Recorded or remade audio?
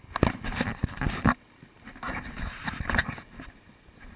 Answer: recorded